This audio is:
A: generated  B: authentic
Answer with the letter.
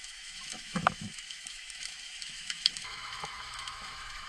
A